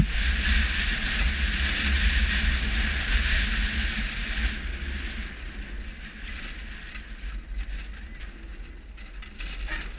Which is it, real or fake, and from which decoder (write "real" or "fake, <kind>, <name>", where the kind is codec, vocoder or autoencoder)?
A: real